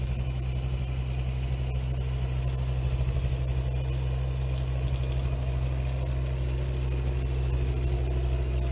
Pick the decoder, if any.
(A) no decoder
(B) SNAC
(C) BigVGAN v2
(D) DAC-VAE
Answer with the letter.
A